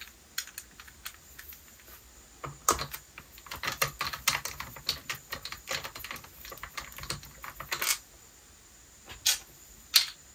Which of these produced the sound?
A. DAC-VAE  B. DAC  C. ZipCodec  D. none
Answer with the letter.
D